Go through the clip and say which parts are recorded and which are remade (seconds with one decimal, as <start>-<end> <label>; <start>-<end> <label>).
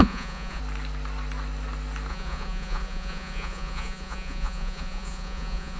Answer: 0.0-0.6 remade; 0.6-2.1 recorded; 2.1-5.8 remade